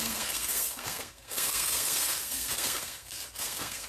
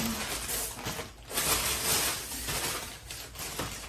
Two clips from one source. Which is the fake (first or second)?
first